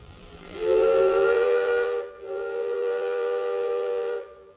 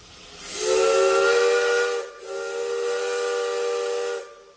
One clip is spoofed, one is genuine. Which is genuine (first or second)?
second